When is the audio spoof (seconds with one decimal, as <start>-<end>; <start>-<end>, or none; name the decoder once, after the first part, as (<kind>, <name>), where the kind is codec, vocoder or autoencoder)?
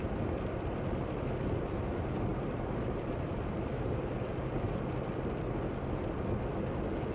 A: 2.3-4.0 (vocoder, BigVGAN v2)